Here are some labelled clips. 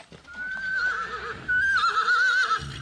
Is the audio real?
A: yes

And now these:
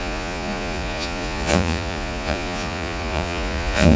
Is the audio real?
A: no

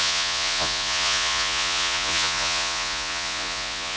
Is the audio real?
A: no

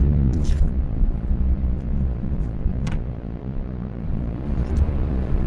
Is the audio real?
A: no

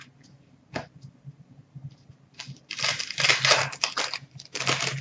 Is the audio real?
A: yes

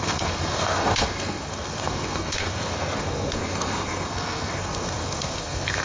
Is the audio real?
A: no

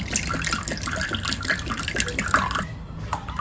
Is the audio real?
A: yes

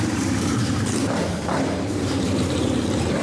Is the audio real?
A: no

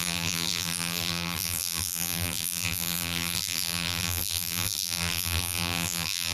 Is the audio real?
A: no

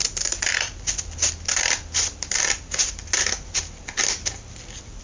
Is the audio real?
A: yes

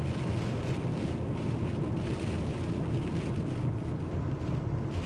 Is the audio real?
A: yes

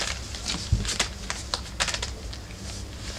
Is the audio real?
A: yes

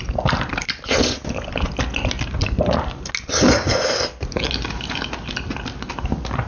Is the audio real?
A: yes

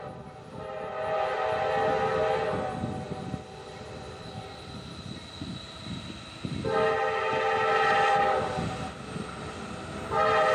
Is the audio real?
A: yes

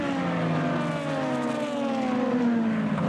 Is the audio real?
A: yes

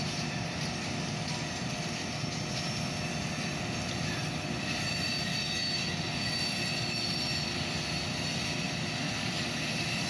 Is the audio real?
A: yes